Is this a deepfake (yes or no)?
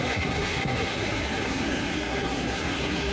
yes